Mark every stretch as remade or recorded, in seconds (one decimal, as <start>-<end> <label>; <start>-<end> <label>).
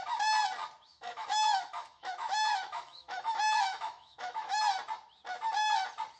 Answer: 0.0-0.9 recorded; 0.9-4.6 remade; 4.6-6.2 recorded